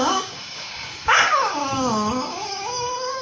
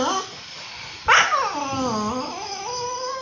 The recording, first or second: second